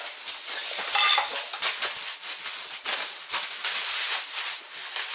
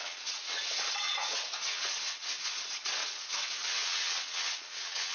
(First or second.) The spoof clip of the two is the second